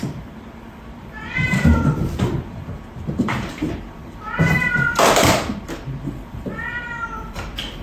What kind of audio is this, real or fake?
fake